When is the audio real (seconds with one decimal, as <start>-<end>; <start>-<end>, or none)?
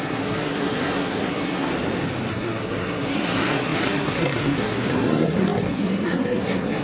1.7-2.3